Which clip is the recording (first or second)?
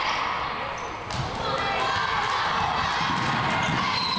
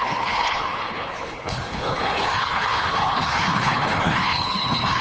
first